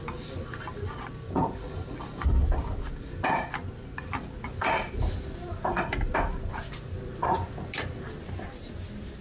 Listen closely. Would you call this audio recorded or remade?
recorded